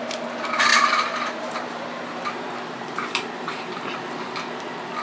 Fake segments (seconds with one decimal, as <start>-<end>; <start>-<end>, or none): 0.7-3.7